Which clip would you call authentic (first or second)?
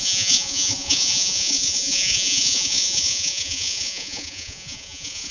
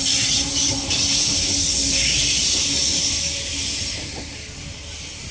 second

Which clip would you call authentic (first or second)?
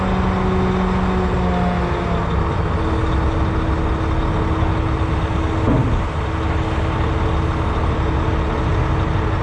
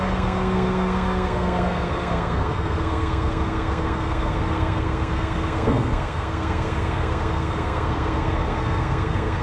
first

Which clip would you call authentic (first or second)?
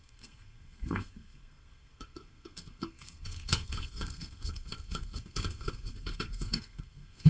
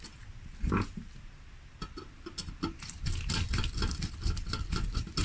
second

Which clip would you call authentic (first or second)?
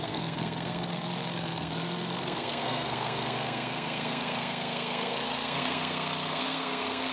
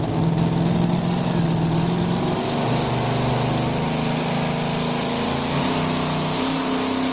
second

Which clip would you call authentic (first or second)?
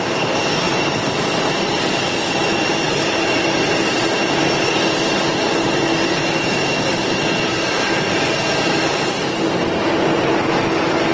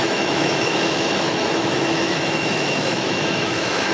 first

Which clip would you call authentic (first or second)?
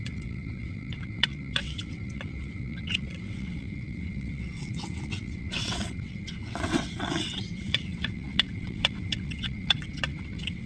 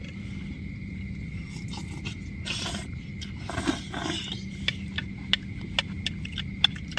second